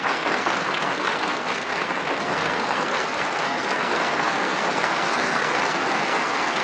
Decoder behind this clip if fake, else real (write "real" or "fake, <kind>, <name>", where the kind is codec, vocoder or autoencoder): fake, codec, SNAC